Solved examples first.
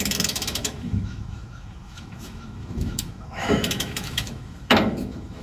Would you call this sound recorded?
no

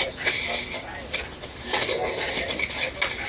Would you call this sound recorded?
yes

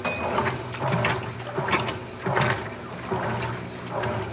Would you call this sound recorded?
yes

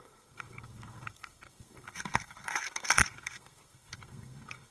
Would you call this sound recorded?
no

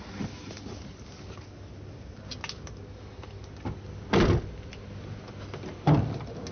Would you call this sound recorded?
yes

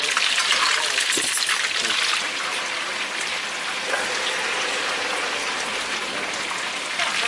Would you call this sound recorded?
yes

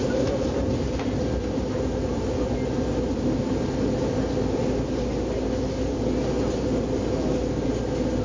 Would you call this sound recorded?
yes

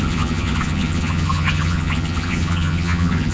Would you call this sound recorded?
no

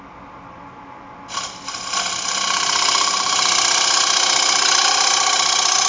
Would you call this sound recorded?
yes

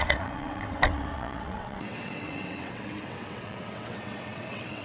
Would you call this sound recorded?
no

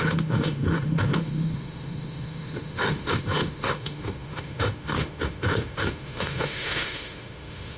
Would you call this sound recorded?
no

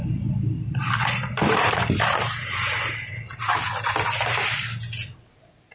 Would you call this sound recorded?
yes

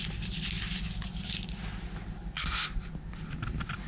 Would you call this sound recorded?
yes